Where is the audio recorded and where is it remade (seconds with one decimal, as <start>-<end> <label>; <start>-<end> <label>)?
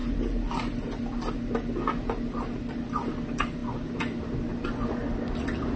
0.0-5.8 recorded